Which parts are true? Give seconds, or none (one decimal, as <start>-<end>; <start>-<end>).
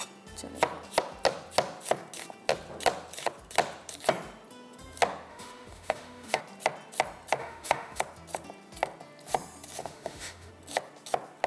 0.0-5.3; 6.4-7.4; 8.0-9.8; 10.5-11.5